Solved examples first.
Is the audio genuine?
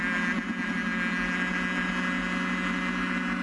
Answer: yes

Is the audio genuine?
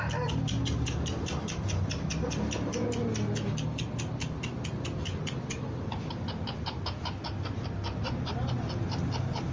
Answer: yes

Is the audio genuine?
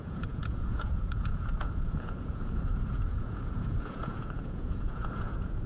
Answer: no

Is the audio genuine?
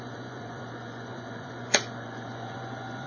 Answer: no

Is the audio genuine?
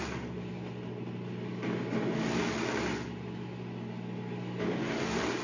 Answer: yes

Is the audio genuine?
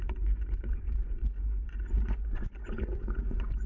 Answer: no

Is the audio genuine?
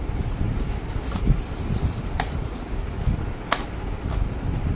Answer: yes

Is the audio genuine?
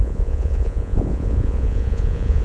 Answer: no